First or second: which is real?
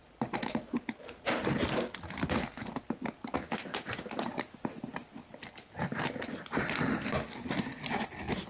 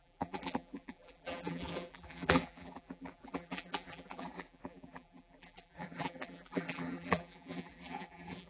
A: first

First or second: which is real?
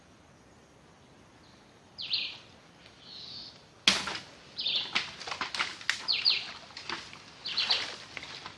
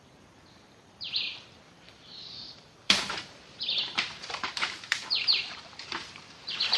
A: first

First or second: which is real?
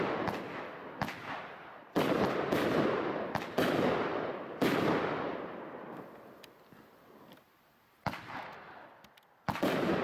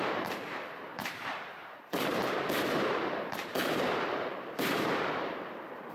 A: first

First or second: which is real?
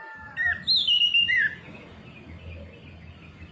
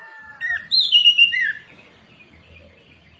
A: first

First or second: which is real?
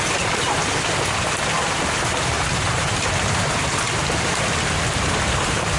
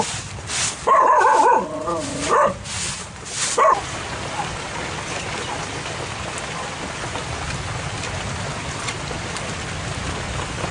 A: second